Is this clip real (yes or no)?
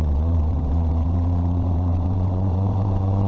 no